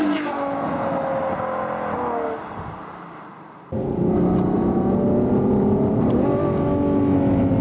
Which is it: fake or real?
real